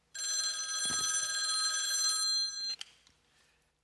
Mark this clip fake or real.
real